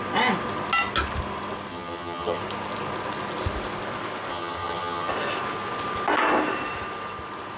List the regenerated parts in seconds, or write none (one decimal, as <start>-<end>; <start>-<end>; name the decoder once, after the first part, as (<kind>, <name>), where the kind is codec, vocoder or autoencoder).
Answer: 1.7-2.4 (vocoder, HiFi-GAN); 4.3-5.1

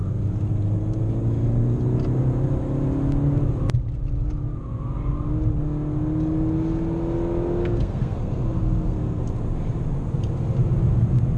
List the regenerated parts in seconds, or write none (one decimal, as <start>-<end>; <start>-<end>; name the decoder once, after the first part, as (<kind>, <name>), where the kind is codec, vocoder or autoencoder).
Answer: 7.6-9.2 (codec, SNAC)